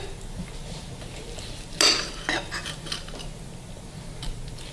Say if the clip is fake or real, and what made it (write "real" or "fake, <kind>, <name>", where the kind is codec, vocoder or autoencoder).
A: real